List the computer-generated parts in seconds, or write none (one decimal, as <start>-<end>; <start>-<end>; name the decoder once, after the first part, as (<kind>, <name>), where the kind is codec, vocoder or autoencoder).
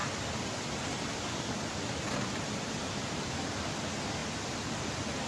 none